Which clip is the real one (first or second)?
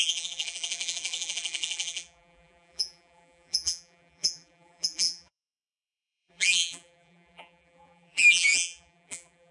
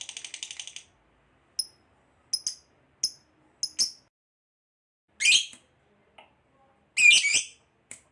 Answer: second